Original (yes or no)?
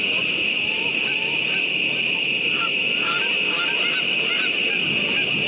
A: yes